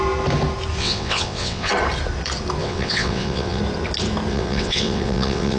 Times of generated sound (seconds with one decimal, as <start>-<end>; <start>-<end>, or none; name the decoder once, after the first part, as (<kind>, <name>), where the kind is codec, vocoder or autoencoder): 0.8-1.7 (vocoder, WaveNeXt); 2.6-3.6; 4.3-5.6

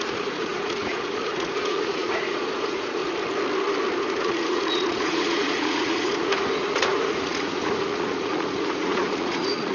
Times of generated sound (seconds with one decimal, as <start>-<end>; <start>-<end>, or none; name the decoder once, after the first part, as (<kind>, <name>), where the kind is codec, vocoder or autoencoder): 0.0-3.0 (vocoder, Vocos); 4.0-9.7

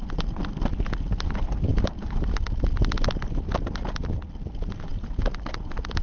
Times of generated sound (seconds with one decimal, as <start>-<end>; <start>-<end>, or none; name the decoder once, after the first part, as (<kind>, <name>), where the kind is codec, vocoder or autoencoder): 1.7-2.4 (vocoder, BigVGAN v2)

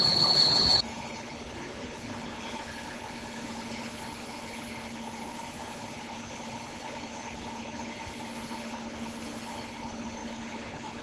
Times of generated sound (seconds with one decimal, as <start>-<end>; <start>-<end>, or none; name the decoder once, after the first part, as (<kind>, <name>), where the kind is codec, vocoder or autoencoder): 0.0-11.0 (codec, HILCodec)

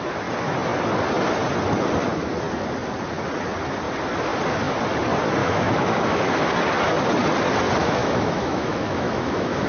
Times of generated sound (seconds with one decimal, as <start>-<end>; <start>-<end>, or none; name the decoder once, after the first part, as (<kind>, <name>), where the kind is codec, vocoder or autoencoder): 5.4-6.4 (autoencoder, DAC-VAE); 7.8-9.7